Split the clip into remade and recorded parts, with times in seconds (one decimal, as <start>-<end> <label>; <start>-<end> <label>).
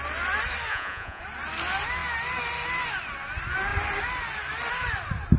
0.0-0.7 recorded; 0.7-1.2 remade; 1.2-5.4 recorded